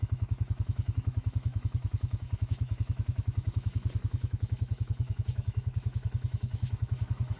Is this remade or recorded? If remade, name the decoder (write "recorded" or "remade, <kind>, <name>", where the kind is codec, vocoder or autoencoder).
remade, autoencoder, DAC-VAE